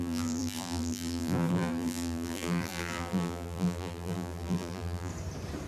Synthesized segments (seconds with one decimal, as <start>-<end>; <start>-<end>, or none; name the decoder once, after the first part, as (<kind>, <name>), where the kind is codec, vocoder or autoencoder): 0.0-5.1 (vocoder, BigVGAN v2)